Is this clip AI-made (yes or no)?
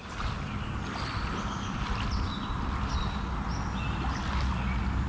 no